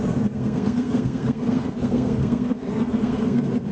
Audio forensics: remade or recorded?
remade